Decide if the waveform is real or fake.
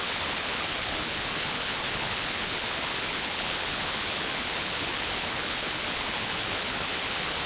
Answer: fake